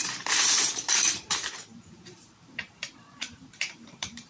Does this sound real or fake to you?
fake